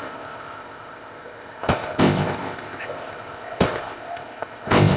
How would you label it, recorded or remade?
remade